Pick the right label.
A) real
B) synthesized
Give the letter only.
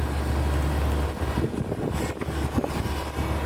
A